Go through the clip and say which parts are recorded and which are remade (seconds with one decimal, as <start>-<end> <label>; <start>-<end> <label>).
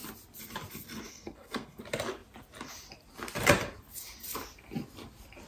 0.0-1.1 recorded; 1.1-1.8 remade; 1.8-5.5 recorded